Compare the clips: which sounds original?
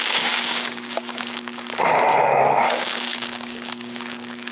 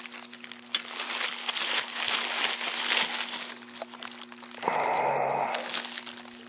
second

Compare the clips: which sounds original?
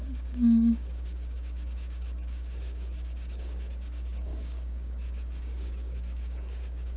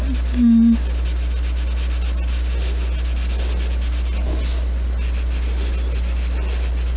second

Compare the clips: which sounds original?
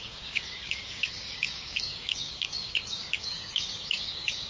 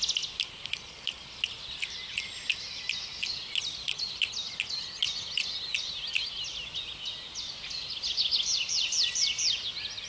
second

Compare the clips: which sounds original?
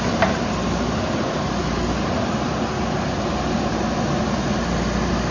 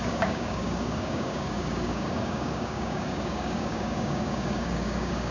first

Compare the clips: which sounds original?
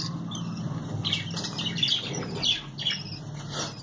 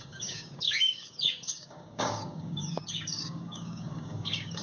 first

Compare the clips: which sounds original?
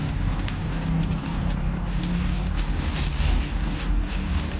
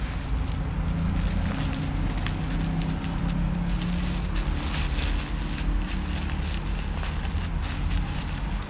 second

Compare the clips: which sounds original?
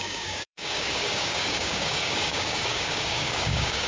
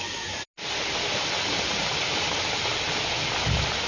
second